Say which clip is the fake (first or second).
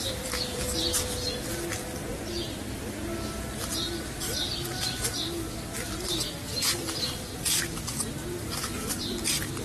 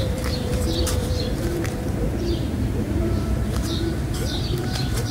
second